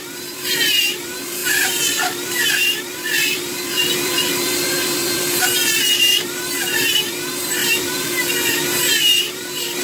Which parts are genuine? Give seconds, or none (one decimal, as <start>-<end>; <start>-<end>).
none